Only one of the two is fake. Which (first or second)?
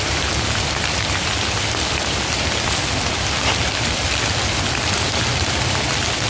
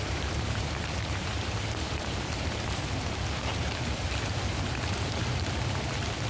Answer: second